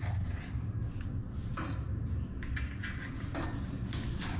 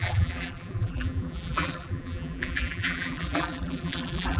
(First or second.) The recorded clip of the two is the first